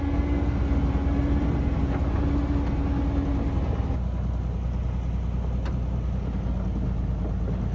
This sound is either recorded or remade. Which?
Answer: recorded